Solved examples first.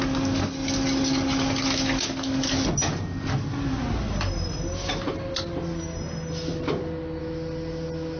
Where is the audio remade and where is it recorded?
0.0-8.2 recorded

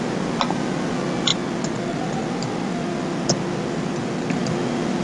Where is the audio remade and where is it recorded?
0.0-5.0 recorded

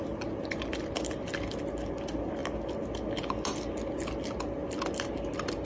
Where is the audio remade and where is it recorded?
0.0-5.7 recorded

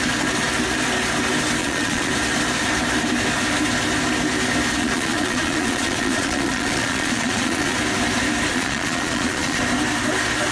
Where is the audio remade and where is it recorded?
0.0-1.6 recorded; 1.6-2.1 remade; 2.1-4.8 recorded; 4.8-7.8 remade; 7.8-8.5 recorded; 8.5-9.6 remade; 9.6-10.5 recorded

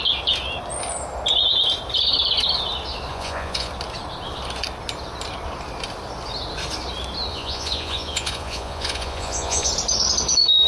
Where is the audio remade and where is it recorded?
0.0-3.1 recorded; 3.1-3.7 remade; 3.7-7.3 recorded; 7.3-9.7 remade; 9.7-10.7 recorded

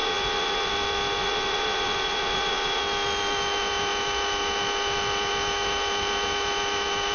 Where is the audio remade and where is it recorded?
0.0-0.7 remade; 0.7-1.2 recorded; 1.2-2.8 remade; 2.8-7.1 recorded

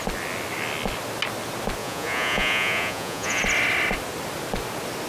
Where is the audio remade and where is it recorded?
0.0-1.8 recorded; 1.8-3.4 remade; 3.4-5.1 recorded